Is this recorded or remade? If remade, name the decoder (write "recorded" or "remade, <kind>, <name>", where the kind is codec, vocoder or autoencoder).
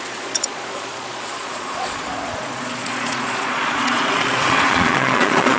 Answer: remade, vocoder, Vocos